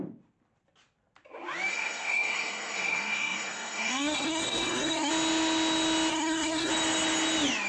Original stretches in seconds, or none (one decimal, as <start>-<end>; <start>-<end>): 0.0-1.7; 5.1-6.1; 6.7-7.7